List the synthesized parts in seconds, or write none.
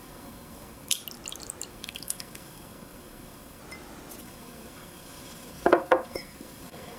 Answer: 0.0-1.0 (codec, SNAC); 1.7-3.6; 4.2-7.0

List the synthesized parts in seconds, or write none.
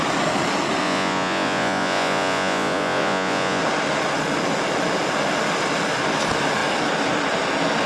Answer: 0.8-3.6 (vocoder, Vocos)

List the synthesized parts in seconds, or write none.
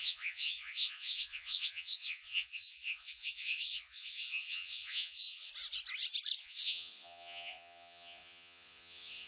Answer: 0.0-5.5 (vocoder, Vocos); 6.4-9.3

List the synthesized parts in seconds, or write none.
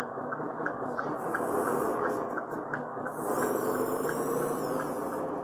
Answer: 1.9-3.3 (codec, DAC)